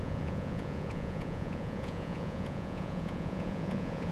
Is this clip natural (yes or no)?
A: no